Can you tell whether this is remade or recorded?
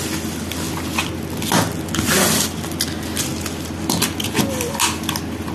recorded